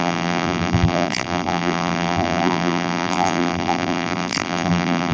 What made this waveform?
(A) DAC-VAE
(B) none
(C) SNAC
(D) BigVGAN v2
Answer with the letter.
D